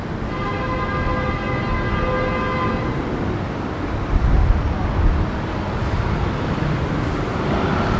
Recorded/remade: recorded